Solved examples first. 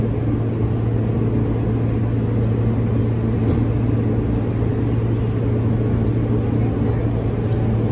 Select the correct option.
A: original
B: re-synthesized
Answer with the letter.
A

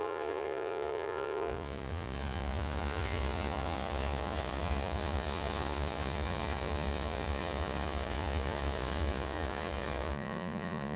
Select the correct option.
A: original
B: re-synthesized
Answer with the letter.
B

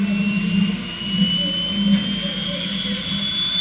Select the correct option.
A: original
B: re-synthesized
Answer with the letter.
A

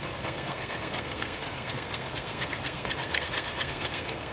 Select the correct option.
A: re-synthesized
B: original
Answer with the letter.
A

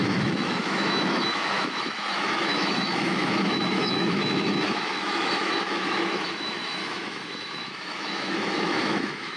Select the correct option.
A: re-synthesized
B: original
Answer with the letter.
A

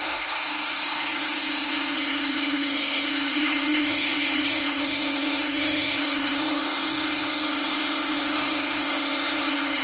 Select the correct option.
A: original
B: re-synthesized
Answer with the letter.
B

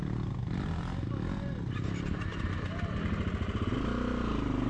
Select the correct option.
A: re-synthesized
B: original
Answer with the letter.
B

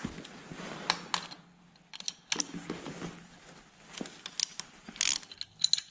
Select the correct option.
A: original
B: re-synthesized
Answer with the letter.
A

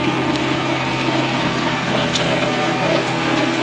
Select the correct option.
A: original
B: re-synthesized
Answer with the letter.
B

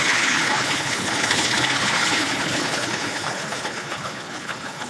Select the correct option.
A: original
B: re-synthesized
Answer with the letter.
B